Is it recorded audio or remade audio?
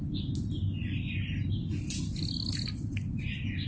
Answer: recorded